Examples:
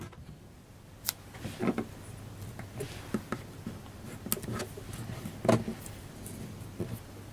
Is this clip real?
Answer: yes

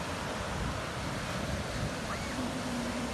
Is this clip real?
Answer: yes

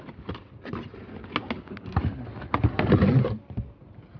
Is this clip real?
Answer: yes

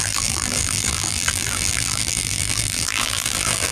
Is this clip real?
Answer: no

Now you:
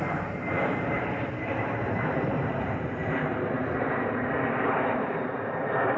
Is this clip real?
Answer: no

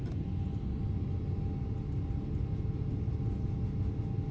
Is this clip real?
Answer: yes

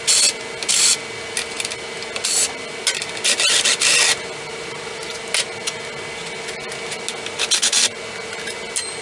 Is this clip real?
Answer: yes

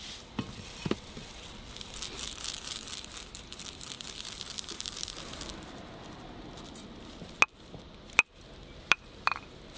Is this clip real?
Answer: yes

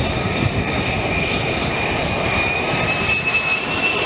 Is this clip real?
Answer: no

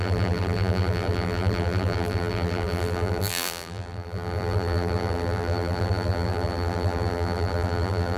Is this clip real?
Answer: no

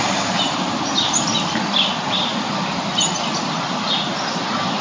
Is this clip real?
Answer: no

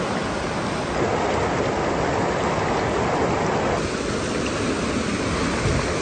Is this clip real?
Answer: yes